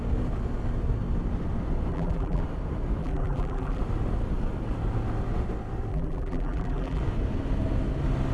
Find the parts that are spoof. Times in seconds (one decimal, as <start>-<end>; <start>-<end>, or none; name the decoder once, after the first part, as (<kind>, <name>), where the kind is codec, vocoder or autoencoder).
1.9-2.4 (vocoder, BigVGAN v2); 3.0-3.8; 5.9-7.0